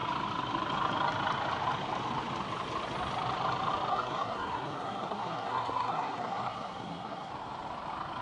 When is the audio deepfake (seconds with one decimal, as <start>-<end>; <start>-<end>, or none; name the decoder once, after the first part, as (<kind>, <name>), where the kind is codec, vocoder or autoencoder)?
3.9-7.3 (codec, SNAC)